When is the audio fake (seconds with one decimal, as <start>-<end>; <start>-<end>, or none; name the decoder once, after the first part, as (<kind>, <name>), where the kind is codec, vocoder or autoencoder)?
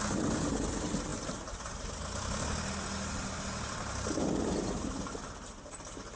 none